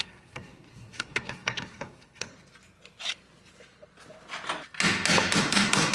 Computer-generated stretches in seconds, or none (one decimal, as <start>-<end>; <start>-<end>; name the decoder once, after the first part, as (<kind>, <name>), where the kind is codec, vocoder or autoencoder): 0.0-2.3 (codec, SNAC); 5.4-5.9